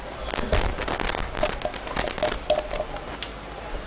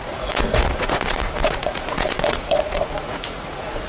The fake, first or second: second